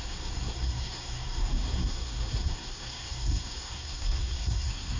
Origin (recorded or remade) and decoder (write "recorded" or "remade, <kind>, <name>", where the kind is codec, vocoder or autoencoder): remade, codec, SNAC